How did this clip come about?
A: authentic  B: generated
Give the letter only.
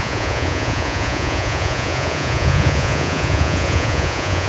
B